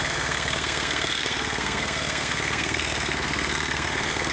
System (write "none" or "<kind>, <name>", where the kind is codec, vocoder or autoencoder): codec, SNAC